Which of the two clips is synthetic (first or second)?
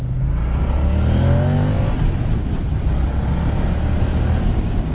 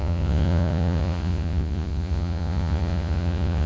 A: second